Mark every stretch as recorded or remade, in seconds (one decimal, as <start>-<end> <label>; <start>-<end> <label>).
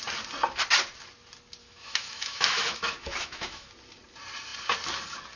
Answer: 0.0-1.6 recorded; 1.6-3.7 remade; 3.7-5.4 recorded